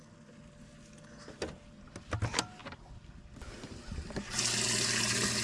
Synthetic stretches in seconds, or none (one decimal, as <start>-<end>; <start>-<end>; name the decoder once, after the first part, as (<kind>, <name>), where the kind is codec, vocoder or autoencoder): none